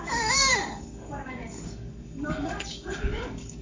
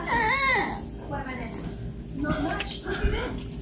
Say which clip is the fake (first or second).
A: first